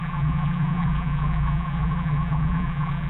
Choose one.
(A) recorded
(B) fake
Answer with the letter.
B